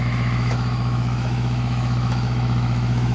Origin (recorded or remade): remade